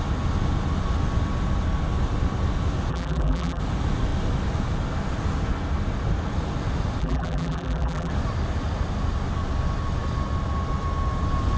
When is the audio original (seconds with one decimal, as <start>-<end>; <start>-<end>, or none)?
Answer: 0.0-2.9; 3.6-7.0; 8.1-11.6